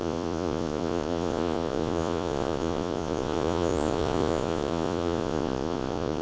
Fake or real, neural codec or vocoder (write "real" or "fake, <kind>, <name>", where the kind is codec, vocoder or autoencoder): fake, vocoder, Vocos